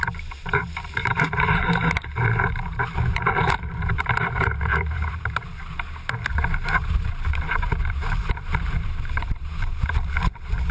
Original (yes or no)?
no